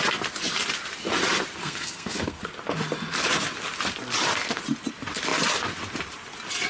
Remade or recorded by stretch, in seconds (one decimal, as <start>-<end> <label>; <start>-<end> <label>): 0.0-1.6 recorded; 1.6-2.4 remade; 2.4-6.7 recorded